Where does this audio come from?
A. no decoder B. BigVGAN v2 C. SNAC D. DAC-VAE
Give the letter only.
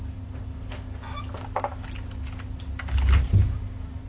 A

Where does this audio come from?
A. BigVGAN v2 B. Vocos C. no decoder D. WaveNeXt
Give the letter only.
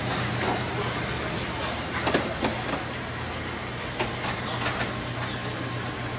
C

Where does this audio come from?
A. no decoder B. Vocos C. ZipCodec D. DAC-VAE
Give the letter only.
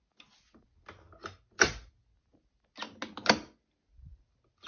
A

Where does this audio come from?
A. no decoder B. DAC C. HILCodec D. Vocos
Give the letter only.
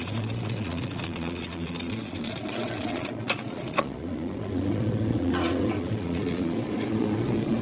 D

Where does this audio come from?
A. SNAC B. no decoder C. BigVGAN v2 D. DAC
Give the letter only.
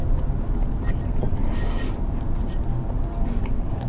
C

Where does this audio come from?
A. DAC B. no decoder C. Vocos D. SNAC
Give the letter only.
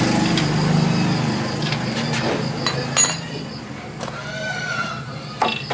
B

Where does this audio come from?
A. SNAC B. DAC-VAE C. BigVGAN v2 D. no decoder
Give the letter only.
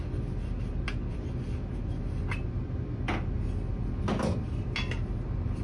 D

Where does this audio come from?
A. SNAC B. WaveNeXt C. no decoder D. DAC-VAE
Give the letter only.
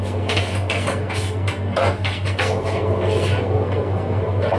A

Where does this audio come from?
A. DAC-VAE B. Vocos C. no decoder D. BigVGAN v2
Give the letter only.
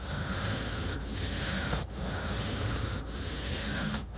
A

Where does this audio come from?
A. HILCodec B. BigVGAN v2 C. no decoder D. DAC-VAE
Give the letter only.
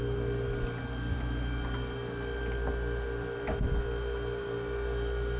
C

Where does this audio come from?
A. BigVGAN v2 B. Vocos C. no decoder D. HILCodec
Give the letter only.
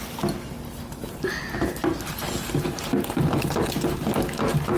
C